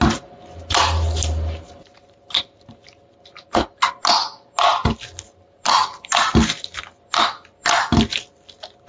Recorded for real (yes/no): yes